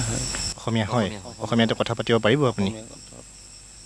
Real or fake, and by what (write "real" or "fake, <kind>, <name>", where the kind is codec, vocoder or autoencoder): real